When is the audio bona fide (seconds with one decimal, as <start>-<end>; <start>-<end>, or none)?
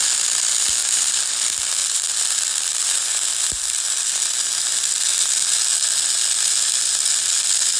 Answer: 0.0-0.8; 1.3-1.8; 4.2-7.8